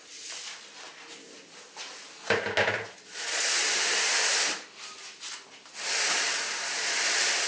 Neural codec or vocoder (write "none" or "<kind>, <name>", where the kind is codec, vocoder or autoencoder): none